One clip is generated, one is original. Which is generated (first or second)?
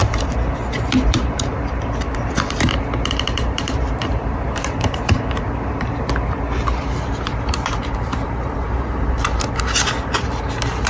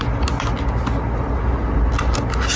first